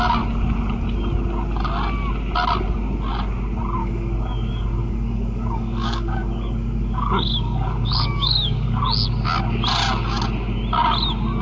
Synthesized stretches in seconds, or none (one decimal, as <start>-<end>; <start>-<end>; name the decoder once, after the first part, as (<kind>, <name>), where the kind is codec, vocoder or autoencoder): 3.8-8.8 (codec, DAC)